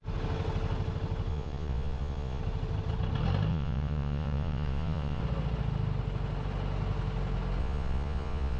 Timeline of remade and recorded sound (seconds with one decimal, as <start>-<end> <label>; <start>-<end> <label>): 0.0-1.3 recorded; 1.3-2.4 remade; 2.4-3.5 recorded; 3.5-5.2 remade; 5.2-7.6 recorded; 7.6-8.6 remade